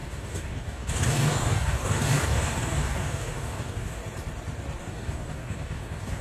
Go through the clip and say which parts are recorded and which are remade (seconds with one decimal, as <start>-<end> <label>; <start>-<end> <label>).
0.0-4.0 remade; 4.0-4.8 recorded; 4.8-6.2 remade